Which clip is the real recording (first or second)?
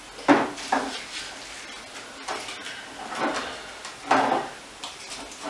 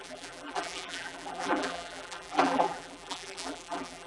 first